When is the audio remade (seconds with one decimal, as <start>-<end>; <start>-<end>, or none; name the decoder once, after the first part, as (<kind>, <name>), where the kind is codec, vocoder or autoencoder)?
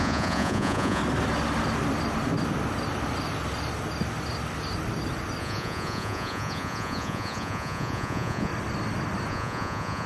0.0-1.0 (vocoder, Vocos); 5.4-8.5; 9.3-10.1